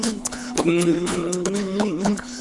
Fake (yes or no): yes